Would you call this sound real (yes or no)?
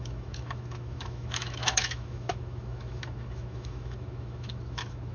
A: no